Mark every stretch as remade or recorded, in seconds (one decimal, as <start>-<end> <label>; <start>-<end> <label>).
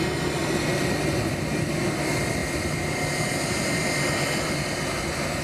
0.0-2.4 recorded; 2.4-3.4 remade; 3.4-5.4 recorded